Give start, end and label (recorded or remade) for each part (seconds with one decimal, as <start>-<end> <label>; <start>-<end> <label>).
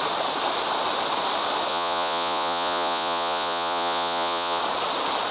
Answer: 0.0-1.7 recorded; 1.7-4.6 remade; 4.6-5.3 recorded